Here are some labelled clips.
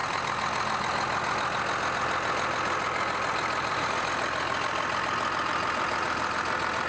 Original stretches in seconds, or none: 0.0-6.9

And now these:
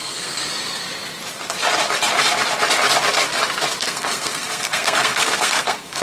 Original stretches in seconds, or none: 0.4-3.8

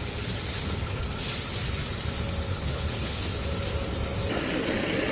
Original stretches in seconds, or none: 0.0-0.5; 1.0-2.5; 3.4-5.1

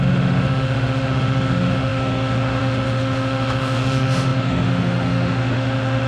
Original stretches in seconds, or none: none

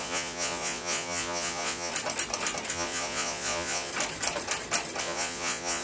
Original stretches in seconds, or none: 1.9-2.7; 3.9-5.0

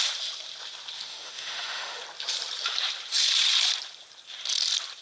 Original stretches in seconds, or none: 0.0-1.1; 2.0-5.0